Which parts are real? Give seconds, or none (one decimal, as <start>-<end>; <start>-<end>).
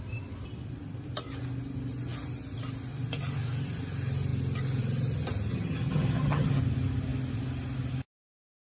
0.0-5.5; 6.6-8.7